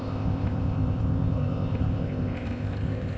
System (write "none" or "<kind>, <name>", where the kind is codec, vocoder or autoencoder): codec, ZipCodec